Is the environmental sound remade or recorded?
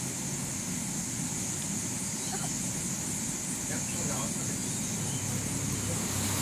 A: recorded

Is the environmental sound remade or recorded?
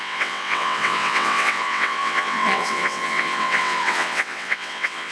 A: remade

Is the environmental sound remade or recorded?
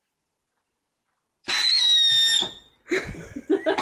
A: recorded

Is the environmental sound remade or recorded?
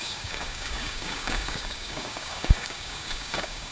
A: remade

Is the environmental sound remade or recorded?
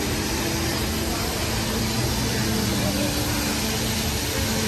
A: recorded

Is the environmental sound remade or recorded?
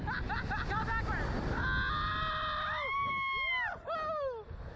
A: recorded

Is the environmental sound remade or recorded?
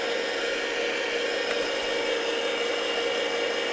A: recorded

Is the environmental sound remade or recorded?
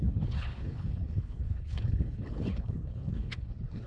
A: remade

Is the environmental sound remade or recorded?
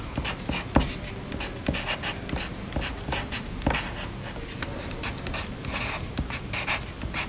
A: recorded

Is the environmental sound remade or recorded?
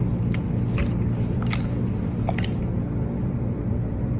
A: recorded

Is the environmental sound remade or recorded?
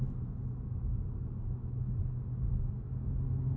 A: recorded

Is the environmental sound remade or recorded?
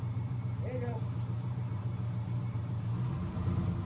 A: remade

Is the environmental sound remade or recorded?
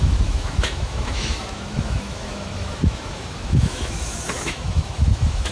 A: remade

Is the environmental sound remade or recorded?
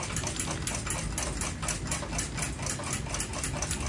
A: recorded